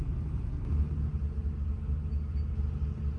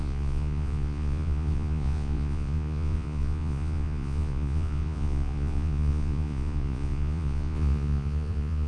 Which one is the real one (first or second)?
first